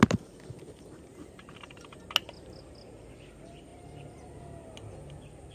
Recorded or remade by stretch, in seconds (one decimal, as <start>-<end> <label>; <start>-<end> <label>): 0.0-1.1 recorded; 1.1-2.0 remade; 2.0-5.5 recorded